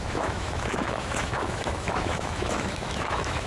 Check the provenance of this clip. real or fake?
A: fake